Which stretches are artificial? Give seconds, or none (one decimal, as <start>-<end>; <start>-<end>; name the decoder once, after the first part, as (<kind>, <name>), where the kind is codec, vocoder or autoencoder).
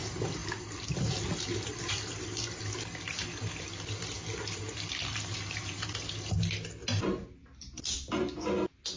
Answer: 0.4-2.6 (vocoder, BigVGAN v2)